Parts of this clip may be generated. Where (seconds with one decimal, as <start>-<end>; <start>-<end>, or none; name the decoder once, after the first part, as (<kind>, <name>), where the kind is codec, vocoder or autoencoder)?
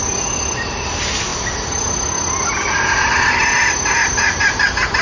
none